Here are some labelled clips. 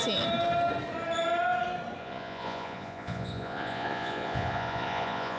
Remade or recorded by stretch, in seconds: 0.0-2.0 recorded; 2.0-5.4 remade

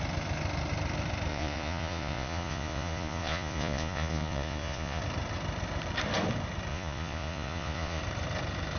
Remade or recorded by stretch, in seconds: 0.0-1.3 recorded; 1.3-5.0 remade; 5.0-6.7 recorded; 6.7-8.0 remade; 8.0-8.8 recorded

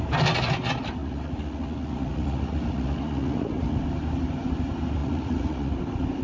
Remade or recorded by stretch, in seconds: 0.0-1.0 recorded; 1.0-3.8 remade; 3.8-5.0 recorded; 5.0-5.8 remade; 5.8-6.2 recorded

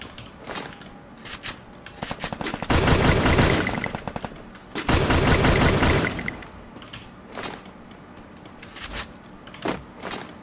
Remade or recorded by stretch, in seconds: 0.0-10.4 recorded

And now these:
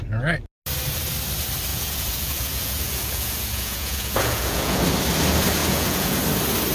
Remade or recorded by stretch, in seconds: 0.0-1.7 recorded; 1.7-4.8 remade; 4.8-5.6 recorded; 5.6-6.2 remade; 6.2-6.7 recorded

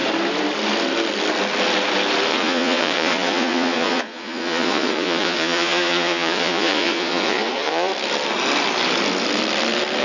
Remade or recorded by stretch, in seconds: 0.0-2.3 recorded; 2.3-7.9 remade; 7.9-10.0 recorded